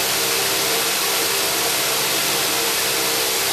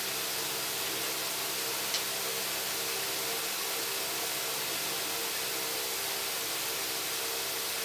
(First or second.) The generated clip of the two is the first